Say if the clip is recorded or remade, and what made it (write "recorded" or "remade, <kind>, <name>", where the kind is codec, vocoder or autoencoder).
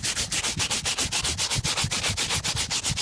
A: recorded